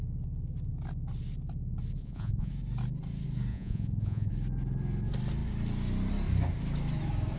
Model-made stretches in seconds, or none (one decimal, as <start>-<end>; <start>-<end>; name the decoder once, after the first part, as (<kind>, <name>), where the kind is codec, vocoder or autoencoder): 2.0-2.5 (vocoder, Vocos); 3.5-4.3